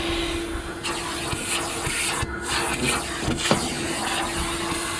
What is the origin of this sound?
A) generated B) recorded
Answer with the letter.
B